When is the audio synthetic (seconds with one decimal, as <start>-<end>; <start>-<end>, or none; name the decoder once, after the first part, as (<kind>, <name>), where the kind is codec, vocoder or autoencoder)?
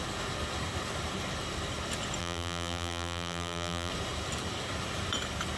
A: 2.2-3.9 (vocoder, BigVGAN v2)